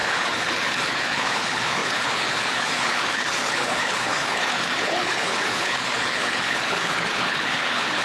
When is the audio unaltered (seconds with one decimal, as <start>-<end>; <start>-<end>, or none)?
none